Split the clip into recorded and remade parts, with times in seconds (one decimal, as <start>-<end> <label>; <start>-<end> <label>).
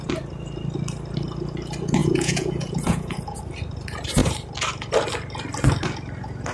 0.0-2.0 recorded; 2.0-3.4 remade; 3.4-6.5 recorded